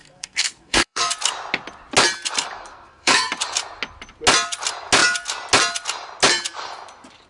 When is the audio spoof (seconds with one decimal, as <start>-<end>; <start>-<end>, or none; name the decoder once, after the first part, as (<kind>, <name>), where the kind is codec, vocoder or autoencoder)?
0.0-1.1 (codec, SNAC); 2.7-3.3